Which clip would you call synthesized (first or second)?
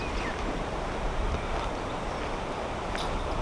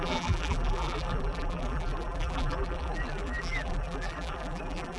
second